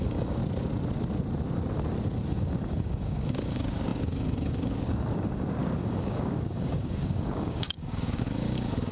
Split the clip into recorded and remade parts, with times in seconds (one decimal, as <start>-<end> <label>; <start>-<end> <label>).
0.0-0.4 remade; 0.4-2.3 recorded; 2.3-8.9 remade